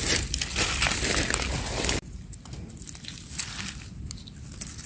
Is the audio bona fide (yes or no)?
yes